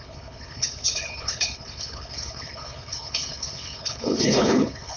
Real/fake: fake